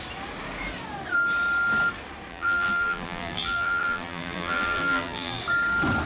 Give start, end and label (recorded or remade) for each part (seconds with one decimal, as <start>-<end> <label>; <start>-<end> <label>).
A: 0.0-2.3 recorded; 2.3-5.4 remade; 5.4-6.1 recorded